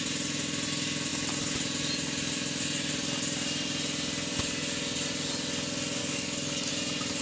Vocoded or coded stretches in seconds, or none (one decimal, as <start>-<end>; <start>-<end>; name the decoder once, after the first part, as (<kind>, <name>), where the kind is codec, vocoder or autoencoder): 6.0-6.7 (codec, DAC)